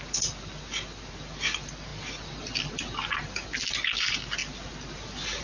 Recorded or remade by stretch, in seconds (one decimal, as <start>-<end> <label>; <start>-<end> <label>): 0.0-5.4 recorded